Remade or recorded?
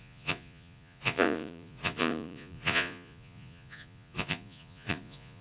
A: remade